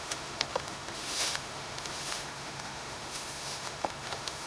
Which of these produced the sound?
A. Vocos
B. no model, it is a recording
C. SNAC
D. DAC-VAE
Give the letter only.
D